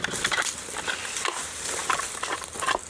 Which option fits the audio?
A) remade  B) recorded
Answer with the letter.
A